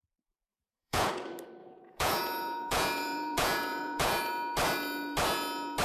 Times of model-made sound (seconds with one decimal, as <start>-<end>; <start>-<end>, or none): 0.5-1.1; 1.6-4.3